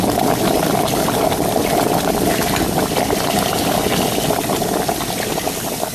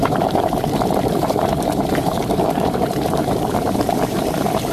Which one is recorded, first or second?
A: first